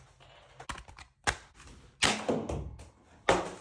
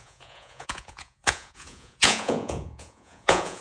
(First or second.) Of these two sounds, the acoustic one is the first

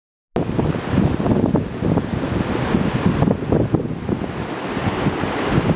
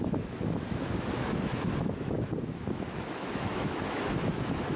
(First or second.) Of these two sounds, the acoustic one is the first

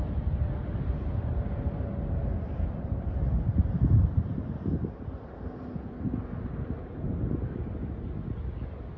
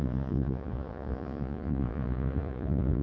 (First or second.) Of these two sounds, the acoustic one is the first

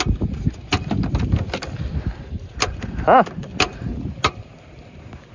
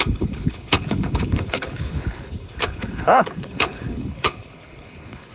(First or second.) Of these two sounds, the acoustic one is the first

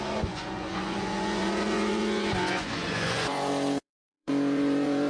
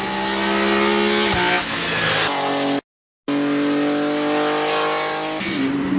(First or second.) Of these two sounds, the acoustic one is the second